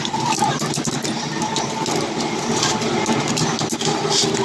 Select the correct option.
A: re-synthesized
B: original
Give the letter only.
B